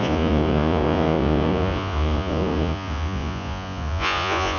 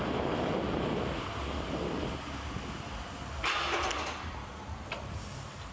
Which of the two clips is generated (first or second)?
first